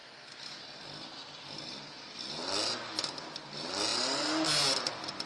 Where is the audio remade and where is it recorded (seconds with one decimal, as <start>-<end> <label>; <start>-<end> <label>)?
0.0-0.6 remade; 0.6-5.3 recorded